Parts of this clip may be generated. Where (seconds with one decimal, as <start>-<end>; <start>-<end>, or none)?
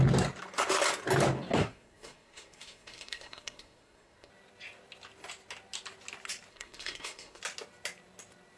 1.6-4.3; 6.5-7.4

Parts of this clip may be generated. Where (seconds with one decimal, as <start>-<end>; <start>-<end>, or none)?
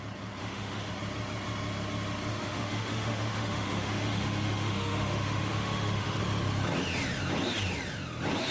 0.4-0.9; 2.3-6.2